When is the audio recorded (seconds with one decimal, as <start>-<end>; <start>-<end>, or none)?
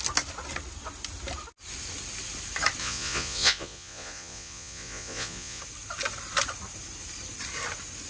0.0-2.8; 5.6-8.1